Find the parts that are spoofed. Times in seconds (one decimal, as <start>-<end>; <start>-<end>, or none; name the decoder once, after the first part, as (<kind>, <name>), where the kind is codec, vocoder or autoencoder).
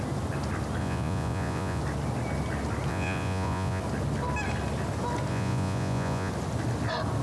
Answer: 0.8-1.8 (vocoder, Vocos); 2.9-3.8; 5.3-6.3